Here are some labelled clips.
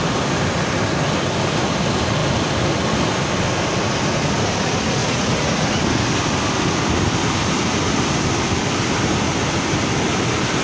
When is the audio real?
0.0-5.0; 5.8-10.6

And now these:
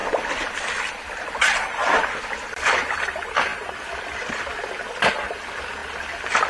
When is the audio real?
0.0-6.5